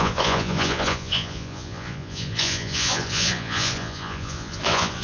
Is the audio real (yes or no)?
no